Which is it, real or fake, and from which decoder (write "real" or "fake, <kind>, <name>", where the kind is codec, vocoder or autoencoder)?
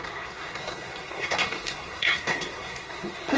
fake, codec, SNAC